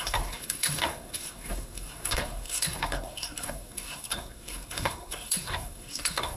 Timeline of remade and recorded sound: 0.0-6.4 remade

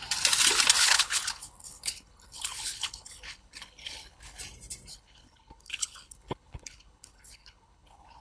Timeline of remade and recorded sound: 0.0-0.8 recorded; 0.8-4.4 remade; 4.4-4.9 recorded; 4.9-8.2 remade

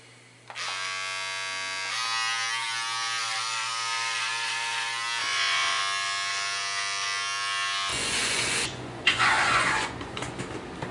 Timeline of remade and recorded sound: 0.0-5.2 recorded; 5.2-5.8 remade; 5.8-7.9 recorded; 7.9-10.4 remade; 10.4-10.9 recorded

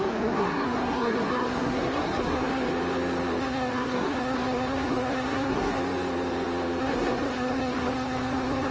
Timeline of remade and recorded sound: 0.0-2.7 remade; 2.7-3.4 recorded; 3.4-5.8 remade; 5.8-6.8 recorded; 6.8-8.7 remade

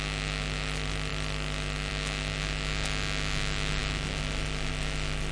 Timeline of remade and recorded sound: 0.0-5.3 recorded

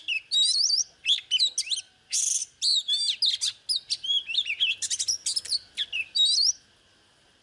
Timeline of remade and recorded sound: 0.0-7.4 recorded